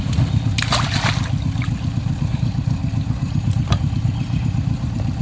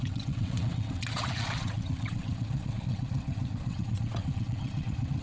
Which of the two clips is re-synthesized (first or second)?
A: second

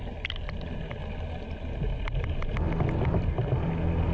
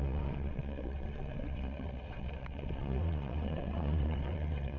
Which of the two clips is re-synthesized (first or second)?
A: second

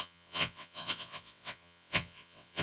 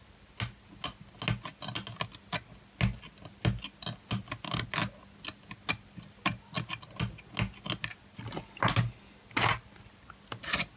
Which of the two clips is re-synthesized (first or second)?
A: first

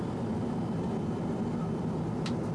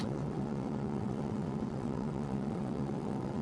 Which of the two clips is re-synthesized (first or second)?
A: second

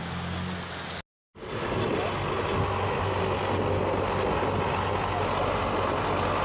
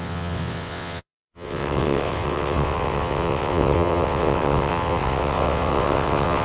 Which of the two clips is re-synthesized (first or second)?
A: second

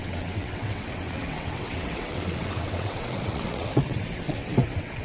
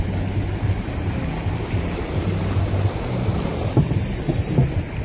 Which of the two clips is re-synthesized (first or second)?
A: first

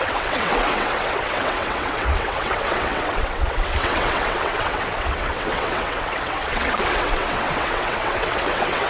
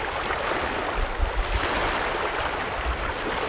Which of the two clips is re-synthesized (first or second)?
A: first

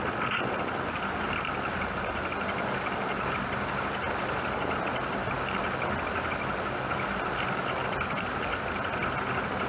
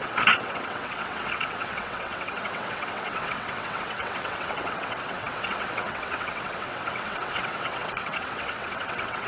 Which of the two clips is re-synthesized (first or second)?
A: second